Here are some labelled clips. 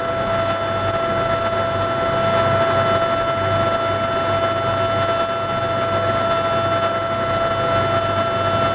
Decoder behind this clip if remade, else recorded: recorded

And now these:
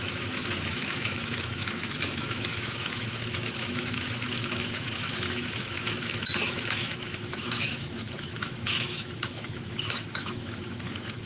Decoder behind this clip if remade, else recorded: remade, autoencoder, DAC-VAE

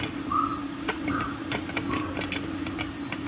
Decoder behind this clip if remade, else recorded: recorded